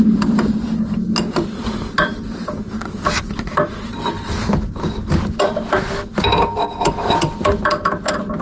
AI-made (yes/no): no